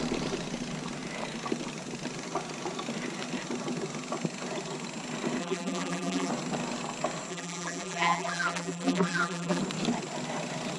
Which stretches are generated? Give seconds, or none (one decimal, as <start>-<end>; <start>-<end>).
5.4-6.3; 7.3-9.6